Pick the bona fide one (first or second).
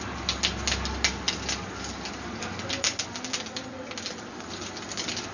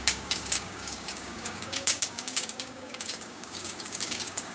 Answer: first